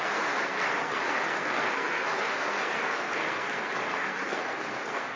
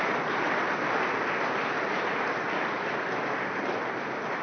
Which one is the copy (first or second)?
first